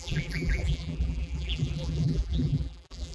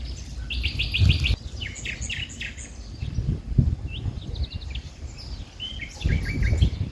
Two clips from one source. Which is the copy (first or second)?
first